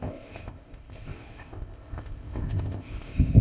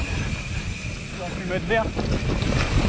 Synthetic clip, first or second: first